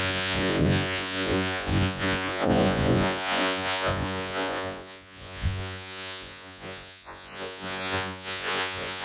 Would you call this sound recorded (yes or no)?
no